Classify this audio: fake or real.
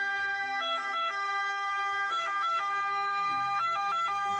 fake